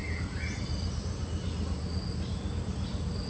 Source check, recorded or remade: recorded